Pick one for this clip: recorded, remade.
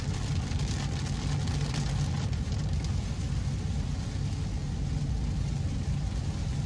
recorded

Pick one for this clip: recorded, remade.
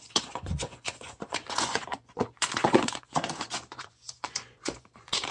remade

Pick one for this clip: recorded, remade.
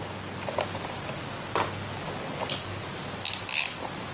recorded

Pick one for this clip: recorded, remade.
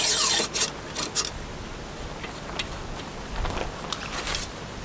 recorded